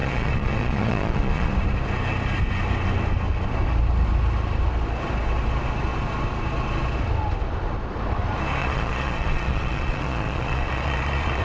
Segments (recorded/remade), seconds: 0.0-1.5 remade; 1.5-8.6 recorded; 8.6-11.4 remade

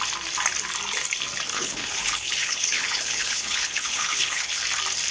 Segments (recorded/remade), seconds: 0.0-1.5 recorded; 1.5-4.6 remade; 4.6-5.1 recorded

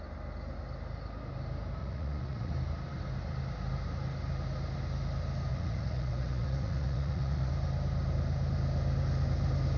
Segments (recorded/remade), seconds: 0.0-1.8 recorded; 1.8-2.5 remade; 2.5-5.5 recorded; 5.5-7.5 remade; 7.5-9.8 recorded

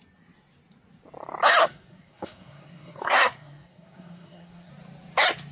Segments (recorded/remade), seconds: 0.0-1.6 recorded; 1.6-4.7 remade; 4.7-5.5 recorded

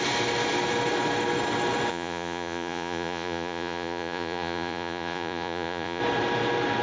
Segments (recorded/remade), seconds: 0.0-1.9 recorded; 1.9-6.0 remade; 6.0-6.8 recorded

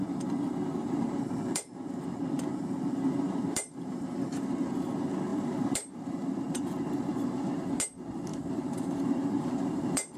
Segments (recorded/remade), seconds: 0.0-0.8 recorded; 0.8-4.8 remade; 4.8-5.3 recorded; 5.3-7.5 remade; 7.5-8.3 recorded; 8.3-10.2 remade

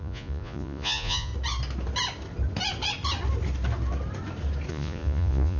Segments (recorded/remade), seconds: 0.0-1.3 remade; 1.3-4.7 recorded; 4.7-5.6 remade